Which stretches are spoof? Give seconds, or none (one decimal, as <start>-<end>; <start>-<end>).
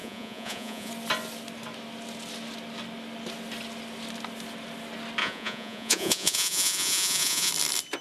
0.0-0.9; 5.2-7.5